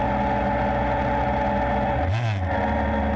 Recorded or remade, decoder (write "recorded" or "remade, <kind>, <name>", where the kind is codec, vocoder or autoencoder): recorded